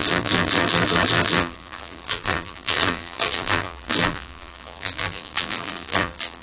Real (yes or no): no